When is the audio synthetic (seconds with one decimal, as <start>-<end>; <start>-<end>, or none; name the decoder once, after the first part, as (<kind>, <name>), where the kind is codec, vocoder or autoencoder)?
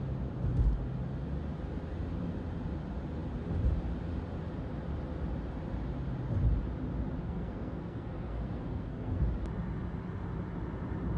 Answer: 7.2-9.2 (codec, SNAC)